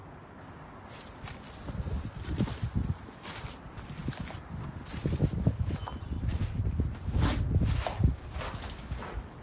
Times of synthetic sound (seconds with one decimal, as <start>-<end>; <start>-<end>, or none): none